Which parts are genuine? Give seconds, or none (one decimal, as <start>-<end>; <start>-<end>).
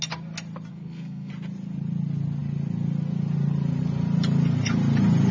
0.0-0.7; 1.3-5.3